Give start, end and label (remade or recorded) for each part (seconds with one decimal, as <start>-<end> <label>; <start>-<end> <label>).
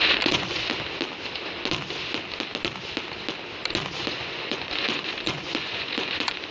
0.0-0.7 remade; 0.7-4.1 recorded; 4.1-6.5 remade